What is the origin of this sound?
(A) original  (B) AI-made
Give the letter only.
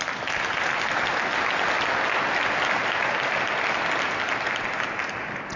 A